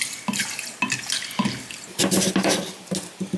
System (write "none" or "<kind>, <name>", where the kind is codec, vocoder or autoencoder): none